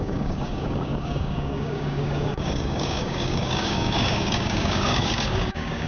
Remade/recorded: remade